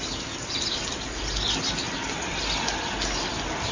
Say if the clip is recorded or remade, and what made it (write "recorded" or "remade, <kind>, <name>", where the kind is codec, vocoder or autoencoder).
recorded